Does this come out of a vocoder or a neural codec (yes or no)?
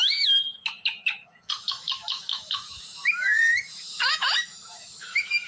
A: yes